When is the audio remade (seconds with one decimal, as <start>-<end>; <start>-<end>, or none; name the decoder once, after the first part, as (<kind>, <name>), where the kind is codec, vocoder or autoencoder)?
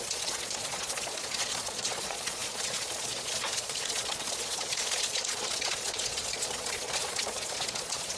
0.0-8.2 (vocoder, Vocos)